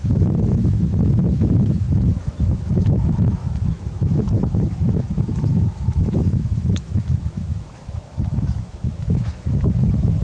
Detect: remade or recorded remade